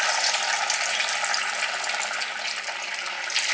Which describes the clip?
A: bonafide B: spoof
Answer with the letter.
A